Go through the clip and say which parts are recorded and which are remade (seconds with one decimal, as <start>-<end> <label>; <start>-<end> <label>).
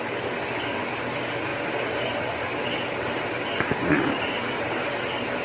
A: 0.0-5.4 recorded